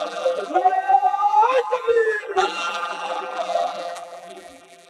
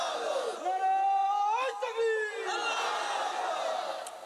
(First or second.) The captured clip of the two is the second